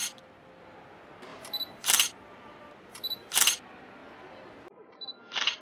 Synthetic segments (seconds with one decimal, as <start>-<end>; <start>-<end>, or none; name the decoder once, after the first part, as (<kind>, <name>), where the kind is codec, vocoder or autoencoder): 0.0-0.6 (vocoder, BigVGAN v2); 1.3-3.3